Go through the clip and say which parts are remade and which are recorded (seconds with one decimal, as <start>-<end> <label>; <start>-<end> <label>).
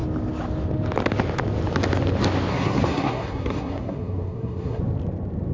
0.0-2.5 recorded; 2.5-4.8 remade; 4.8-5.5 recorded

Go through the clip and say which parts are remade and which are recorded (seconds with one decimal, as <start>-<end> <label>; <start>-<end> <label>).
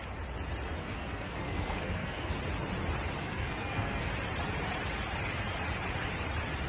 0.0-0.8 recorded; 0.8-2.3 remade; 2.3-3.2 recorded; 3.2-4.1 remade; 4.1-6.7 recorded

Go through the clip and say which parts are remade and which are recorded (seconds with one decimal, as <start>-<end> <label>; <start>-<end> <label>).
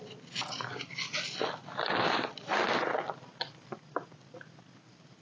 0.0-5.2 recorded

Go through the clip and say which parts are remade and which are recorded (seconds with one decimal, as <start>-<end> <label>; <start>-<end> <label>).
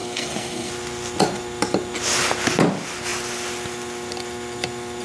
0.0-0.7 remade; 0.7-5.0 recorded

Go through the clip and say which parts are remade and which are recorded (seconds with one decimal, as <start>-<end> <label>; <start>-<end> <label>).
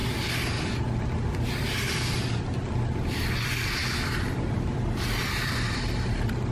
0.0-6.5 recorded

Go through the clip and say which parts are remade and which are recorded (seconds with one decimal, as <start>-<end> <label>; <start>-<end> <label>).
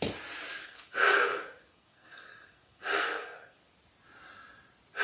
0.0-0.6 recorded; 0.6-3.6 remade; 3.6-5.0 recorded